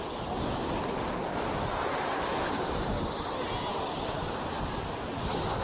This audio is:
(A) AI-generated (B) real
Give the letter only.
B